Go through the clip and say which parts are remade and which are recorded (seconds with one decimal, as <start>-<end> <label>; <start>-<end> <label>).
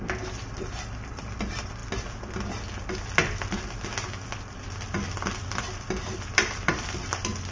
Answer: 0.0-1.8 remade; 1.8-5.3 recorded; 5.3-7.5 remade